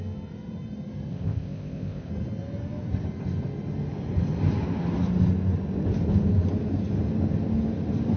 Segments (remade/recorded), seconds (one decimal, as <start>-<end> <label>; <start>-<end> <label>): 0.0-1.1 recorded; 1.1-2.1 remade; 2.1-8.2 recorded

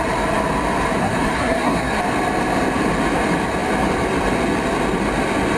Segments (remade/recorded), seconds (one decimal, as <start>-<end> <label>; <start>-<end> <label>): 0.0-1.0 recorded; 1.0-2.0 remade; 2.0-5.6 recorded